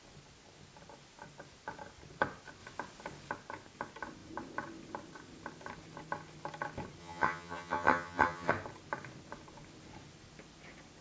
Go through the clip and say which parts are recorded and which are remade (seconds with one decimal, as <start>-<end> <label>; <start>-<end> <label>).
0.0-7.0 recorded; 7.0-8.5 remade; 8.5-11.0 recorded